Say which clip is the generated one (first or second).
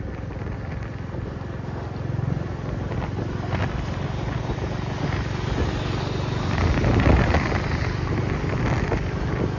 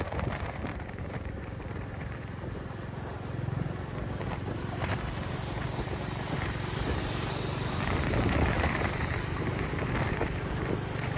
second